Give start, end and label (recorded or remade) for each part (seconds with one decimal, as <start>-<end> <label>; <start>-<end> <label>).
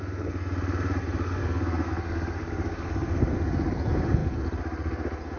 0.0-1.4 recorded; 1.4-3.3 remade; 3.3-5.4 recorded